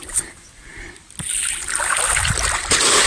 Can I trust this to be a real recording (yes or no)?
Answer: yes